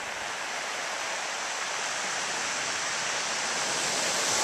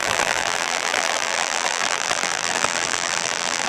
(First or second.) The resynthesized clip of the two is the second